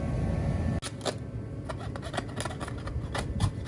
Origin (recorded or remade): recorded